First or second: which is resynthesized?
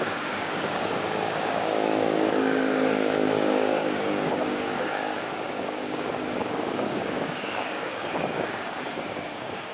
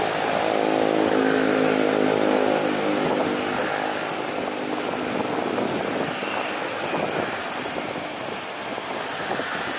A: first